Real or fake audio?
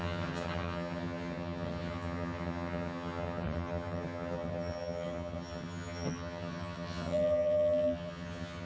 fake